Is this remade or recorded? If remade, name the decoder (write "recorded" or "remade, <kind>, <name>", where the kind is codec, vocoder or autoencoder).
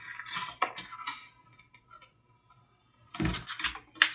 recorded